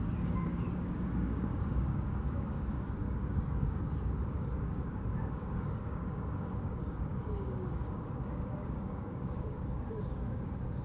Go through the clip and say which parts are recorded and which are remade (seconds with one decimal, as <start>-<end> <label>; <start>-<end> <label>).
0.0-10.8 remade